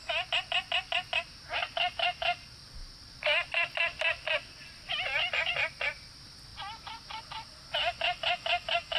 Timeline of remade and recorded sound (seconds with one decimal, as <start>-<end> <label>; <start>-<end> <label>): 0.0-6.5 recorded; 6.5-7.2 remade; 7.2-9.0 recorded